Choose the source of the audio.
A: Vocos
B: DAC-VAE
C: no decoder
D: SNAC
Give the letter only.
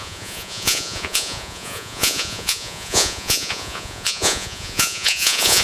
A